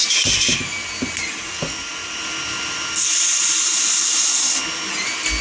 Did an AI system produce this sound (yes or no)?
no